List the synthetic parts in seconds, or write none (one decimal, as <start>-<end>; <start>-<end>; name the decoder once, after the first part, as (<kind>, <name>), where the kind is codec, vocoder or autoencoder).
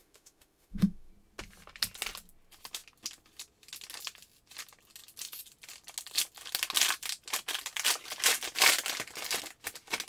0.0-1.1 (autoencoder, DAC-VAE)